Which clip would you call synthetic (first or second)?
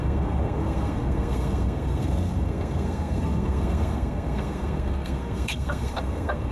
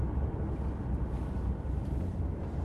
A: first